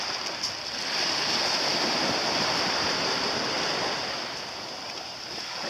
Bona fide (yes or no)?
yes